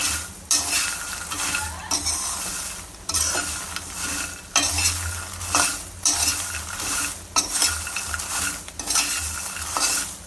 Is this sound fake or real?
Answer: real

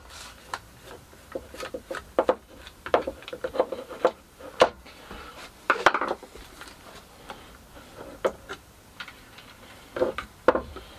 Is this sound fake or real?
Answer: fake